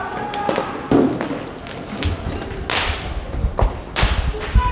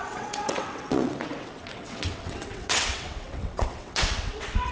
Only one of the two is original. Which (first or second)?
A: first